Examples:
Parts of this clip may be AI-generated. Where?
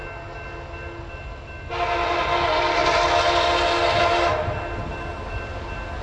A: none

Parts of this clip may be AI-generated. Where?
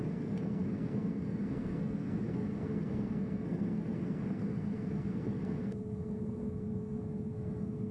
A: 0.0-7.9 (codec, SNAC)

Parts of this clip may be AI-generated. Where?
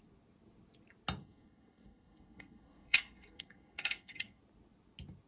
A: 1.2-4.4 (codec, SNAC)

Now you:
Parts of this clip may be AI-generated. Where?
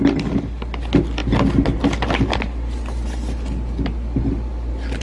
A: none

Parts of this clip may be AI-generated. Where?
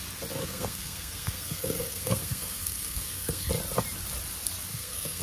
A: 0.4-3.5 (codec, SNAC); 4.7-5.2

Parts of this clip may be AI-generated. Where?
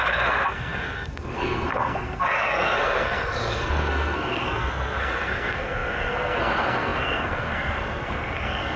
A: 0.0-8.8 (codec, SNAC)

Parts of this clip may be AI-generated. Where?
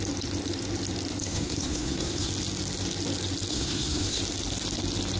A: 1.2-2.3 (codec, SNAC); 3.5-4.2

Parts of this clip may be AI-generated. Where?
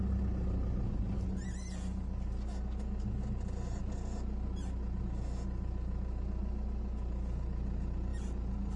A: none